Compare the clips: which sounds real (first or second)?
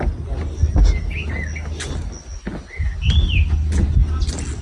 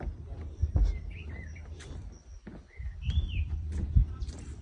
first